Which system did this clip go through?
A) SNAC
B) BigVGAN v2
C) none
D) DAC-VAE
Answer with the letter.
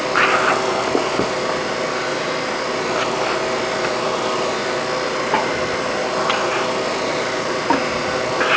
C